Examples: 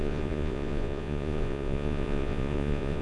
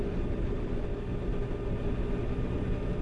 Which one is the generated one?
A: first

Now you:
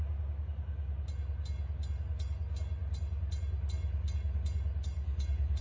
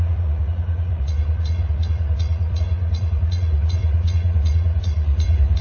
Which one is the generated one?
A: second